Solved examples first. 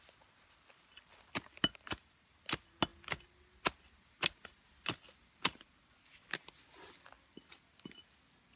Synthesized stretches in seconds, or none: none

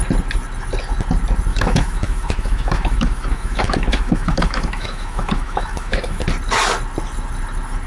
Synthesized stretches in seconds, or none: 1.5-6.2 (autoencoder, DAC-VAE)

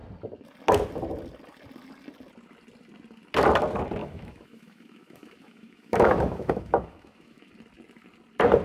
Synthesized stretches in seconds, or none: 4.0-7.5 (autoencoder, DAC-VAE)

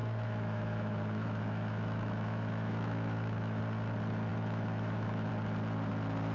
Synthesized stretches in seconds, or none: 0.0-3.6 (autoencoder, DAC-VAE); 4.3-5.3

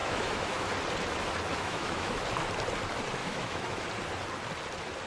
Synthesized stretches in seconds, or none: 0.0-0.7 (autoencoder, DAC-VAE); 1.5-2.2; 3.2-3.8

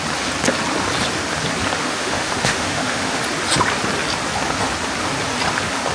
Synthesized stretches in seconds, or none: 1.8-3.2 (autoencoder, DAC-VAE)

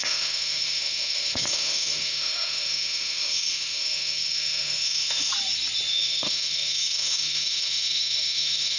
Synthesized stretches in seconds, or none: 0.0-5.3 (autoencoder, DAC-VAE); 5.9-8.8